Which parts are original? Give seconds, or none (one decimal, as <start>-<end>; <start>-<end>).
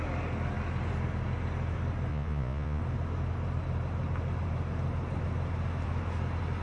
0.0-2.1; 2.8-6.6